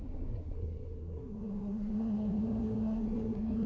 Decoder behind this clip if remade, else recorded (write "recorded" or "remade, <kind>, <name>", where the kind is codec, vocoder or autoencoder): remade, codec, SNAC